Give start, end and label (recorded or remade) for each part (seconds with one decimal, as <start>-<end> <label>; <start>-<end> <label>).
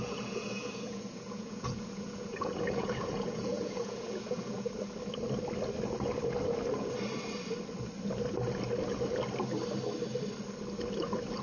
0.0-4.7 remade; 4.7-11.4 recorded